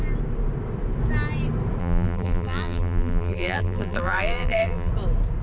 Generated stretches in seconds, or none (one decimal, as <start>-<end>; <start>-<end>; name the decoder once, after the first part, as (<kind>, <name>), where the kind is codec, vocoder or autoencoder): 1.8-4.9 (vocoder, BigVGAN v2)